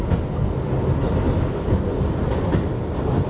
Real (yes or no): yes